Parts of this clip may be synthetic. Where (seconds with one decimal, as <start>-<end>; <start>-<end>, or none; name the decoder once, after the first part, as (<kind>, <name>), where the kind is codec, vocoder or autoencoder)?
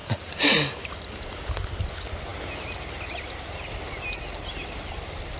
none